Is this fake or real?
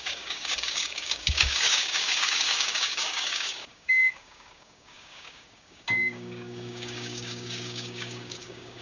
fake